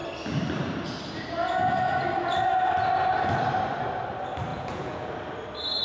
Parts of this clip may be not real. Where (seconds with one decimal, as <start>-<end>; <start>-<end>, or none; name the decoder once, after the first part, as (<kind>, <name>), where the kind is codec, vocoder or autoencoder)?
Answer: 4.5-5.1 (vocoder, Vocos)